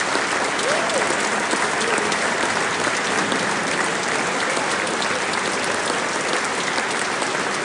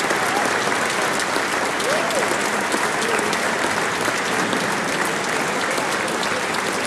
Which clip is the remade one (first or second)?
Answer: first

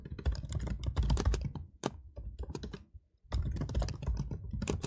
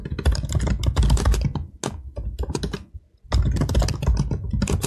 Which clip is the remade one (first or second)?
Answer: first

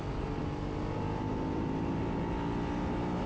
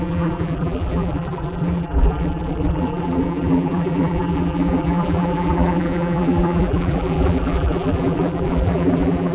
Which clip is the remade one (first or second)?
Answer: second